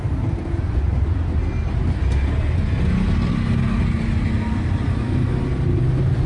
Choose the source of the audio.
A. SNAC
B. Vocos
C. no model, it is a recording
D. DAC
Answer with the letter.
C